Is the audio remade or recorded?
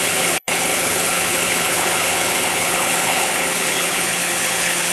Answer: remade